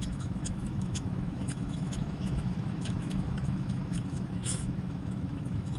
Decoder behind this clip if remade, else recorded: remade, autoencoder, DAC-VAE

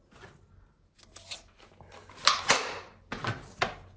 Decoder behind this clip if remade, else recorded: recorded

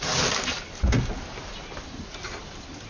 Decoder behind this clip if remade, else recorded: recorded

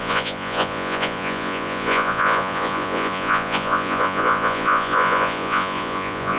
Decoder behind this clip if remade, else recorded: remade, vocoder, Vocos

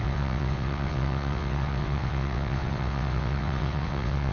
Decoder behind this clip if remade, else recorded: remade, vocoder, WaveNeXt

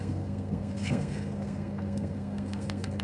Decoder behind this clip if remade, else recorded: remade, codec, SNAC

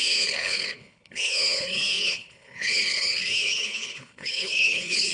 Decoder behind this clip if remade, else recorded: remade, codec, HILCodec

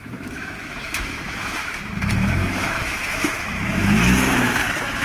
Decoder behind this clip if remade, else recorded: remade, autoencoder, DAC-VAE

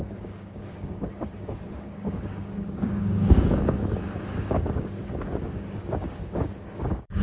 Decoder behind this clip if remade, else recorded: remade, codec, DAC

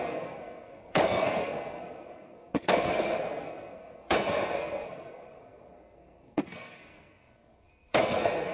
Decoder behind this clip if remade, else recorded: remade, codec, SNAC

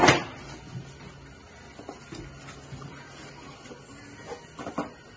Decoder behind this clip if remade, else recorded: recorded